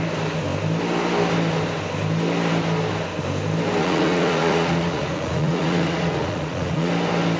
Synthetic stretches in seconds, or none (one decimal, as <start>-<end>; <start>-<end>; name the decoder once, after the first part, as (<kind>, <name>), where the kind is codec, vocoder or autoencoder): 3.8-6.9 (vocoder, Vocos)